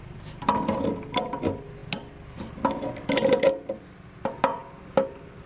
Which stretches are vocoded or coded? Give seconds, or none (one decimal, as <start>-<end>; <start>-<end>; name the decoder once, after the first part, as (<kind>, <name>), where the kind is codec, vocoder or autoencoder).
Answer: none